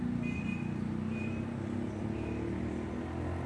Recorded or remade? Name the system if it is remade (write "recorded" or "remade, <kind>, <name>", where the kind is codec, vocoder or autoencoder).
recorded